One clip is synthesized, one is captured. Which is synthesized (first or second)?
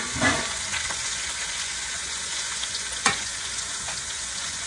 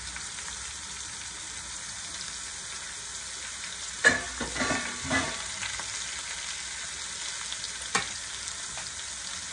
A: first